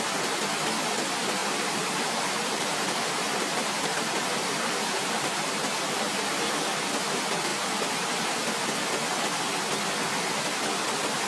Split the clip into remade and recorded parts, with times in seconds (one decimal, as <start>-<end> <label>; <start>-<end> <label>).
0.0-1.4 recorded; 1.4-5.6 remade; 5.6-7.5 recorded; 7.5-8.2 remade; 8.2-11.3 recorded